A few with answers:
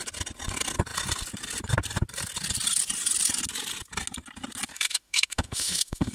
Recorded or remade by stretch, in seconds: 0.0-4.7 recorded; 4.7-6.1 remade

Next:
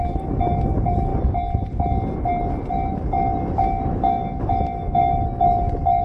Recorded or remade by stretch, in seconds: 0.0-1.1 remade; 1.1-2.7 recorded; 2.7-6.0 remade

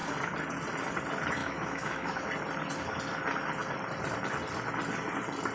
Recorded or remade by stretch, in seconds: 0.0-1.4 recorded; 1.4-2.3 remade; 2.3-5.5 recorded

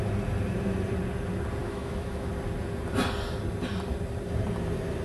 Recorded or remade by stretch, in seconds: 0.0-1.6 recorded; 1.6-2.3 remade; 2.3-5.0 recorded